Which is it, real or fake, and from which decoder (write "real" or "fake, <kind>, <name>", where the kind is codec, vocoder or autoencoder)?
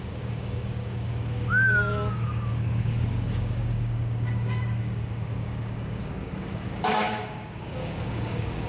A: fake, codec, DAC